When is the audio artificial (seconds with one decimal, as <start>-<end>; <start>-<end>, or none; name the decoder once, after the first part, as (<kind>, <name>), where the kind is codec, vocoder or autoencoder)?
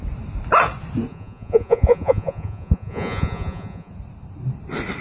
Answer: 1.1-3.9 (vocoder, Vocos)